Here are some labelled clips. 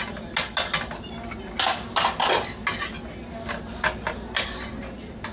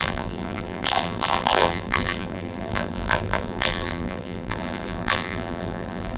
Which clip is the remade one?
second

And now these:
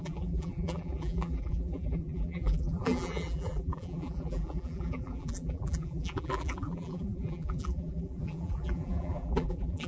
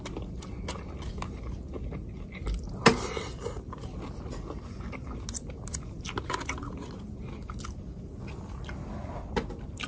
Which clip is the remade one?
first